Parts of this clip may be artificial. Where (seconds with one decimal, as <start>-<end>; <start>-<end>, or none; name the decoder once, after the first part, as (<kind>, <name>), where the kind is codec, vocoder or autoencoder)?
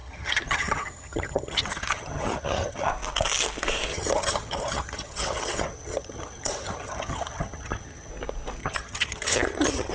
0.0-2.9 (vocoder, HiFi-GAN); 3.9-8.1; 8.6-9.9